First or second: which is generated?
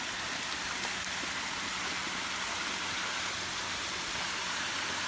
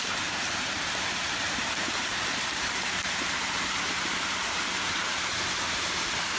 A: second